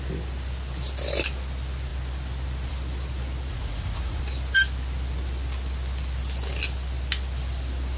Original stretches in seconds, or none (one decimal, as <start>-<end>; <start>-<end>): 0.0-3.5; 4.2-8.0

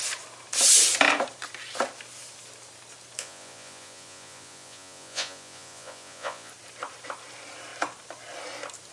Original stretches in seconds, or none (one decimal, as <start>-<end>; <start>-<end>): 0.0-3.2; 6.5-8.9

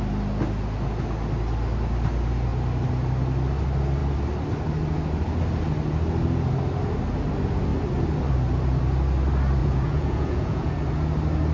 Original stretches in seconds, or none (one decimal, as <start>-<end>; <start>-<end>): 0.0-9.6; 10.7-11.5

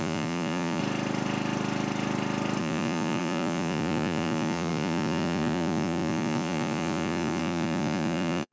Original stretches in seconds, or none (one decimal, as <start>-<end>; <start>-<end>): 0.8-2.6

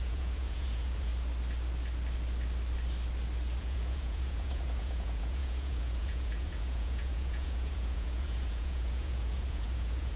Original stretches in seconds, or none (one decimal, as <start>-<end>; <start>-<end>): 1.1-3.6

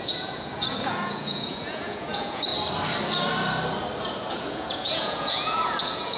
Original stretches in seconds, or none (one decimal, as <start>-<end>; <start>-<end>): 2.5-4.3

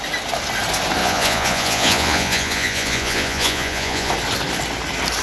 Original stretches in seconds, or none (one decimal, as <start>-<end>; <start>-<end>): 0.0-1.0; 4.1-5.2

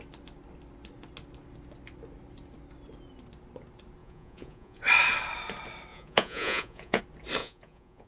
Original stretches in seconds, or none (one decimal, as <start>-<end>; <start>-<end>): 0.0-4.0; 4.8-5.9; 7.0-7.4